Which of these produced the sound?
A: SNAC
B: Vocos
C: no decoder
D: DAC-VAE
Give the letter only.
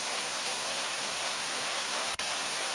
A